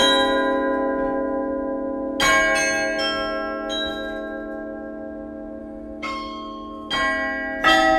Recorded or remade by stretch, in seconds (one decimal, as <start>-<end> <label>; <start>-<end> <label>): 0.0-5.6 recorded; 5.6-6.9 remade; 6.9-8.0 recorded